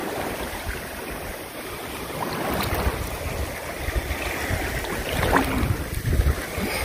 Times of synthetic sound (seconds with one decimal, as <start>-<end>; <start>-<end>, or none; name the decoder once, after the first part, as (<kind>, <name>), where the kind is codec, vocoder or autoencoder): none